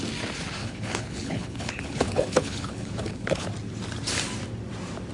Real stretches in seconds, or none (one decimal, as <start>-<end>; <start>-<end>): 0.0-0.6; 3.5-5.1